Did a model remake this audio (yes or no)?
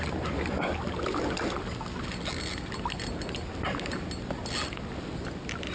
no